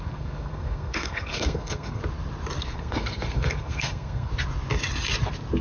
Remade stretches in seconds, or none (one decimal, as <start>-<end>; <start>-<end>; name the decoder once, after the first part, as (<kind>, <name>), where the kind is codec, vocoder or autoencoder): 0.0-2.0 (codec, SNAC); 2.6-4.3